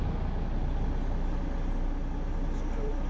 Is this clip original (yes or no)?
yes